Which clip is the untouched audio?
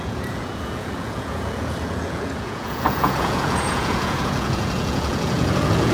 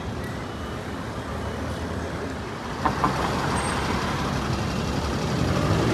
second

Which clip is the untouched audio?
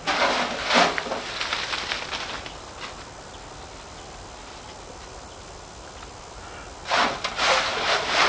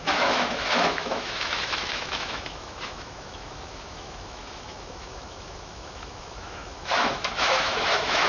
first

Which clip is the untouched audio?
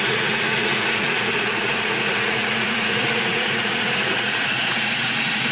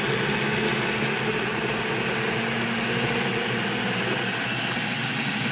second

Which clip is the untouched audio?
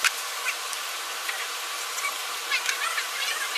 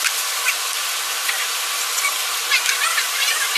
first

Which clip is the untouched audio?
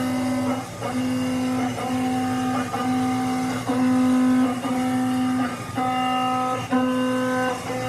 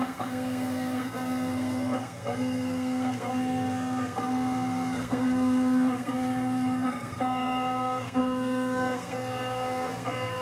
first